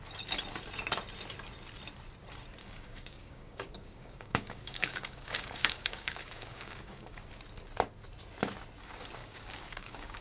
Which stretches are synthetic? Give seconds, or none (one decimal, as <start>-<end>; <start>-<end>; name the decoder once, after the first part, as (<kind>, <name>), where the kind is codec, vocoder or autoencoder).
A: 2.6-7.3 (codec, DAC); 9.2-10.2